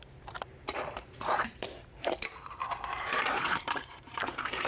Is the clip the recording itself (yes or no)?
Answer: no